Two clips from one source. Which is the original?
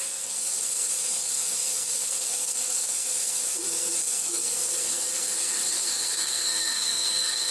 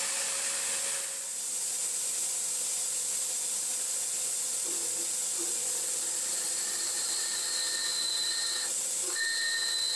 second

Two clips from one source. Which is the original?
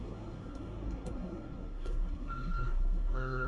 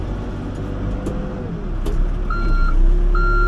second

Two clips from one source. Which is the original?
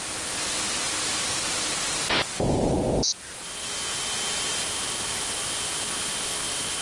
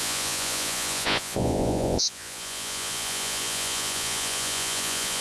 first